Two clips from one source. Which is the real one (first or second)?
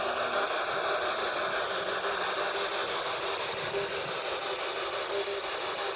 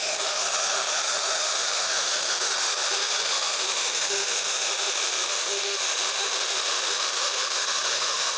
first